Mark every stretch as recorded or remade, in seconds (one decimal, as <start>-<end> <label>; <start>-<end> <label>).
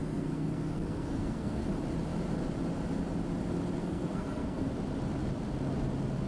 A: 0.0-1.7 remade; 1.7-3.8 recorded; 3.8-4.7 remade; 4.7-6.3 recorded